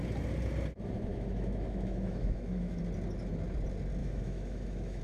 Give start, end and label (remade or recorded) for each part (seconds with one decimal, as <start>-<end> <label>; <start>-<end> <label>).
0.0-1.1 recorded; 1.1-2.8 remade; 2.8-4.0 recorded; 4.0-5.0 remade